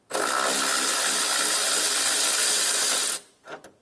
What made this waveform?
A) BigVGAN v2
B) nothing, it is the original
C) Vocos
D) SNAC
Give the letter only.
B